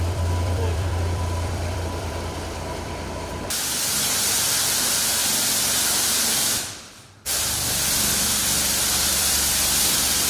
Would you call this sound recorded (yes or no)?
no